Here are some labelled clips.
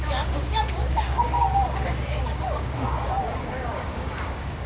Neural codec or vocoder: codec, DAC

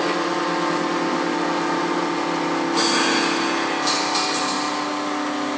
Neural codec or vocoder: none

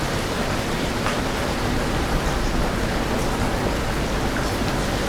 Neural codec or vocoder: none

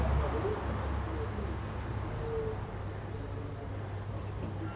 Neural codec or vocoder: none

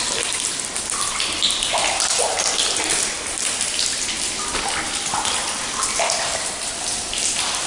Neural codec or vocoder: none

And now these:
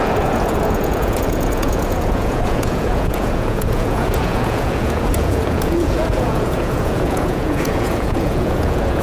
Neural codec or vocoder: vocoder, Vocos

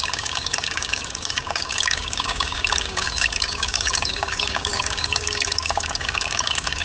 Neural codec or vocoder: codec, DAC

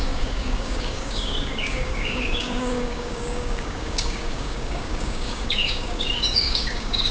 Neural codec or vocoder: codec, DAC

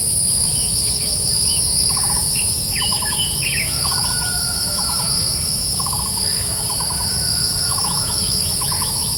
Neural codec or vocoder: autoencoder, DAC-VAE